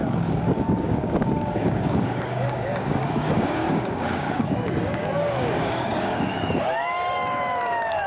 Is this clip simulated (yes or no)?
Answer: yes